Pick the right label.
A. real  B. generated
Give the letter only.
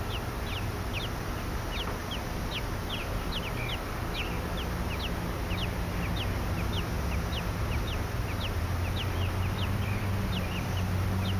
A